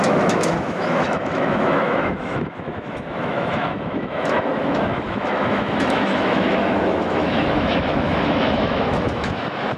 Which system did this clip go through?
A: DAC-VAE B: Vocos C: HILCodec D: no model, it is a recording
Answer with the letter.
A